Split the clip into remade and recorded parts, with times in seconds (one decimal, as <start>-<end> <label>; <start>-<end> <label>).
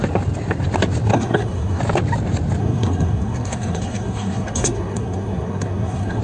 0.0-1.1 recorded; 1.1-1.8 remade; 1.8-2.6 recorded; 2.6-6.2 remade